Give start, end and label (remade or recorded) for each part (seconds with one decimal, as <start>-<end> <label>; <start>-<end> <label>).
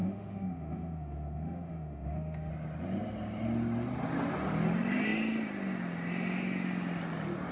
0.0-2.5 remade; 2.5-7.5 recorded